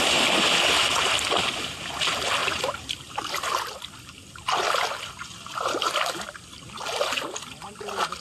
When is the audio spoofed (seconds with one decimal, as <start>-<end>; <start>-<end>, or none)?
2.4-3.3